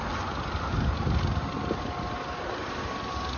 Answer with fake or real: real